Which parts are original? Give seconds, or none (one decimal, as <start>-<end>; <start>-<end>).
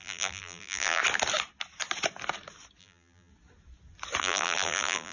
1.0-2.8; 3.3-4.2